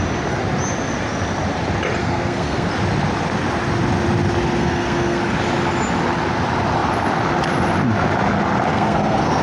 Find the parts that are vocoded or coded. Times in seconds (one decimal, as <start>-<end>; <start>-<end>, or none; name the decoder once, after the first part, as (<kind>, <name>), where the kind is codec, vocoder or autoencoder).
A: 2.0-2.7 (codec, SNAC); 4.6-5.2; 8.7-9.4